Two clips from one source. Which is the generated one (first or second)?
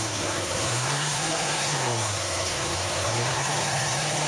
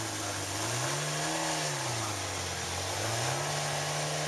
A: first